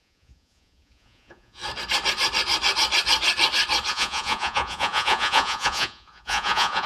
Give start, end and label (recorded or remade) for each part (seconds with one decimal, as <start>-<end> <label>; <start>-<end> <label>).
0.0-1.6 remade; 1.6-3.9 recorded; 3.9-6.9 remade